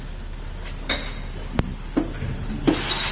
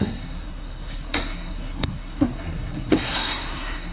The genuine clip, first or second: first